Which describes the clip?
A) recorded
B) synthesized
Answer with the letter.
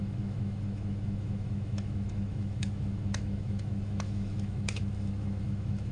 B